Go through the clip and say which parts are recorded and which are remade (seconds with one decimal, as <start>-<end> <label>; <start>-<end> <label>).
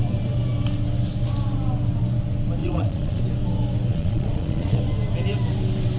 0.0-2.6 recorded; 2.6-3.2 remade; 3.2-3.9 recorded; 3.9-4.8 remade; 4.8-6.0 recorded